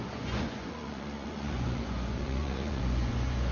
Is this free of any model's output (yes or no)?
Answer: no